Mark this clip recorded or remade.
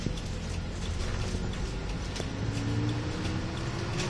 recorded